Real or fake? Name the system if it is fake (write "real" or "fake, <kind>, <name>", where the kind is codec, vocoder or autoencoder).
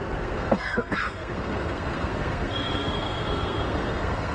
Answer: fake, codec, SNAC